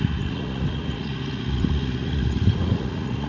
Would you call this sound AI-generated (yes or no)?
yes